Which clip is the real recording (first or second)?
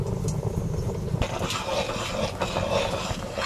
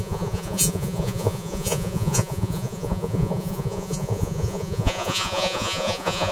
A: first